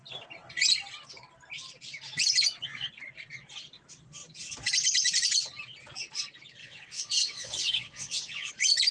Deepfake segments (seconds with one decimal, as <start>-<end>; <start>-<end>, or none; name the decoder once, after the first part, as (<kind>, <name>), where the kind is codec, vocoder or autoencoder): 6.6-8.5 (vocoder, WaveNeXt)